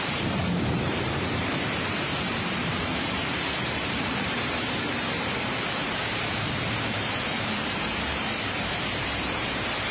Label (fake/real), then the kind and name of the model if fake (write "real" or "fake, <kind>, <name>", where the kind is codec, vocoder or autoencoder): fake, vocoder, BigVGAN v2